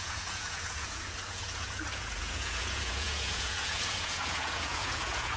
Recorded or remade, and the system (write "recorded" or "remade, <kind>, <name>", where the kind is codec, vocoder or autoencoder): remade, vocoder, Vocos